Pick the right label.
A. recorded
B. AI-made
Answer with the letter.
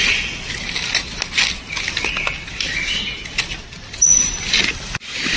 A